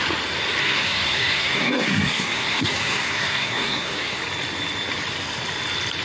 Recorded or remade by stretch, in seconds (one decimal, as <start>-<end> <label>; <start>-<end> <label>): 0.0-0.6 recorded; 0.6-4.2 remade; 4.2-6.0 recorded

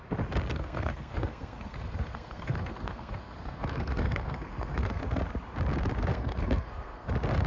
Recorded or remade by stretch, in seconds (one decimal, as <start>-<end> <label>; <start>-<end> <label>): 0.0-0.5 recorded; 0.5-5.0 remade; 5.0-6.1 recorded; 6.1-7.1 remade; 7.1-7.5 recorded

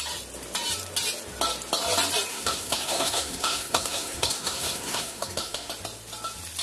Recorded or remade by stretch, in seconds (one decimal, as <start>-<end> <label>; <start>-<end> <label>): 0.0-2.3 recorded; 2.3-5.7 remade; 5.7-6.6 recorded